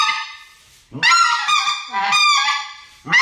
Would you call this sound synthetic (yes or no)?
no